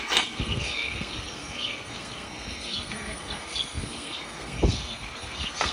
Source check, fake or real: fake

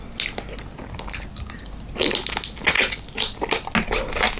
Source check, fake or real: real